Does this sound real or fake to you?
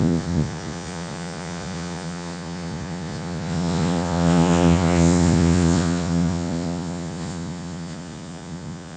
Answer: fake